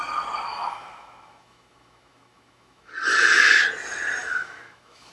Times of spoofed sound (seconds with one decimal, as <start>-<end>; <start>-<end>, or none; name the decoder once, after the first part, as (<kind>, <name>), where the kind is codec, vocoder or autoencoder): 0.5-2.9 (autoencoder, DAC-VAE); 4.2-5.1